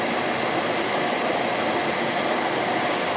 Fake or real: real